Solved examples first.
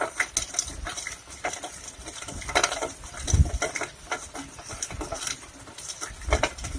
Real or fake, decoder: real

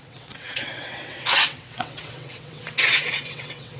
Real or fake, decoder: fake, vocoder, WaveNeXt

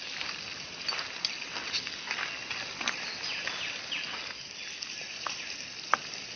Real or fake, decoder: real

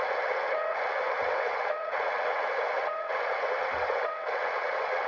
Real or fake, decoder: fake, vocoder, WaveNeXt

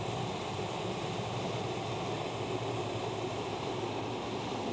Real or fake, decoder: real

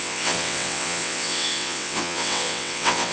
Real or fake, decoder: fake, vocoder, WaveNeXt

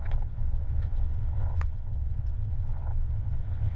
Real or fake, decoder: fake, vocoder, WaveNeXt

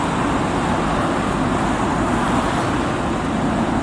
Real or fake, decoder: real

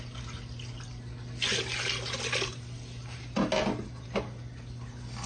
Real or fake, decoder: real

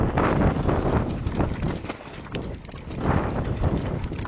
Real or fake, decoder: real